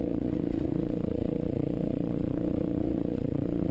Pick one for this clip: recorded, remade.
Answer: remade